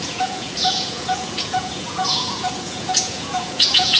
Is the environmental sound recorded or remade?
remade